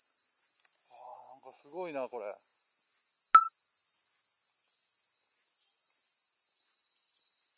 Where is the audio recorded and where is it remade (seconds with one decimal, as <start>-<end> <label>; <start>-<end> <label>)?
0.0-7.6 recorded